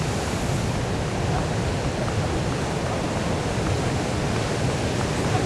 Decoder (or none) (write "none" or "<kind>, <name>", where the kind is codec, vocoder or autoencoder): none